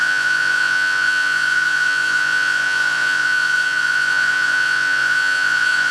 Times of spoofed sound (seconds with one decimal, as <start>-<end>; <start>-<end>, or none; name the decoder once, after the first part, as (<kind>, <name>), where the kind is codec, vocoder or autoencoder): 0.0-5.9 (vocoder, Vocos)